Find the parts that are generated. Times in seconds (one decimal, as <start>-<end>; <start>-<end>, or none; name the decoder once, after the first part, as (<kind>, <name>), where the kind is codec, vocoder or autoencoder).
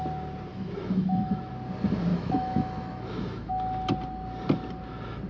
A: 0.5-1.5 (autoencoder, DAC-VAE); 2.1-3.5